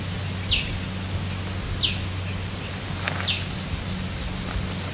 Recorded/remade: recorded